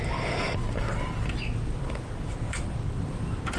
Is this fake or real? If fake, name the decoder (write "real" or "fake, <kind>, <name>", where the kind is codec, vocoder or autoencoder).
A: real